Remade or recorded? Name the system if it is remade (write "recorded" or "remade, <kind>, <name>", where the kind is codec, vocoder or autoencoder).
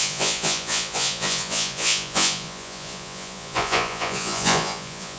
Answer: remade, vocoder, Vocos